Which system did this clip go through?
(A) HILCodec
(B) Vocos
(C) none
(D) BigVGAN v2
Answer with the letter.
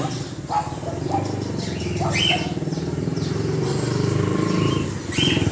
C